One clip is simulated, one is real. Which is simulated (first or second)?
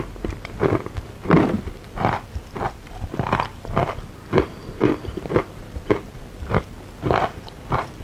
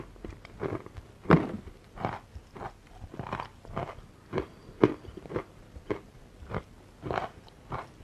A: first